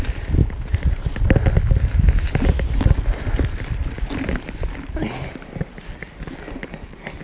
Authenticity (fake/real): real